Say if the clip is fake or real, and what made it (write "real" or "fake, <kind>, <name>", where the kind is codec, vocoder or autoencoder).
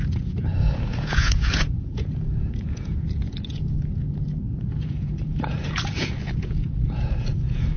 fake, vocoder, Vocos